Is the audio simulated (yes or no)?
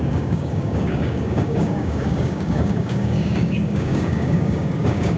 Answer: yes